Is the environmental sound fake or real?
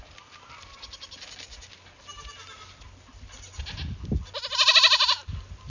real